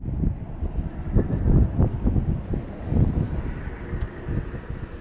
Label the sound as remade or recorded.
recorded